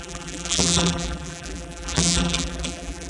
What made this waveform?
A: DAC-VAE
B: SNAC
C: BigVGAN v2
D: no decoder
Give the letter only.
C